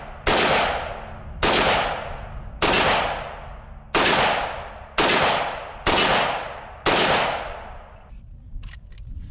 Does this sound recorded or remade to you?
recorded